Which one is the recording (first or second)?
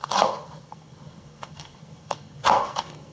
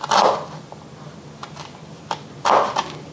second